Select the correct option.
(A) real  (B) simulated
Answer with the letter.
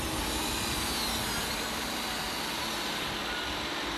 A